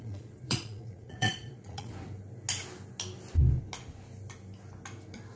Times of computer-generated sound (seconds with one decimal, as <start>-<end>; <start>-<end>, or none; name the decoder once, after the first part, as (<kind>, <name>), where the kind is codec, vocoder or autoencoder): 0.0-1.9 (vocoder, Vocos)